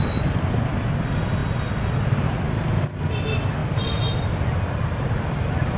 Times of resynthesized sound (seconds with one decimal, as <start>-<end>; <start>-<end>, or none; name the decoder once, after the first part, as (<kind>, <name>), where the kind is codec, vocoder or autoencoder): none